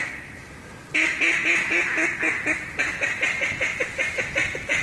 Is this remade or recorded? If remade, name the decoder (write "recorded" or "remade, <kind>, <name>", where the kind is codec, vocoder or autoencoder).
recorded